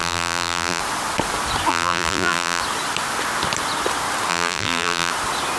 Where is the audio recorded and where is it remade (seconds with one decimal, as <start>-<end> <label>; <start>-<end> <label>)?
0.0-0.8 remade; 0.8-1.7 recorded; 1.7-2.6 remade; 2.6-4.3 recorded; 4.3-5.1 remade; 5.1-5.6 recorded